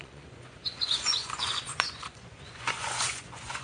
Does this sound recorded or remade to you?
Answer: remade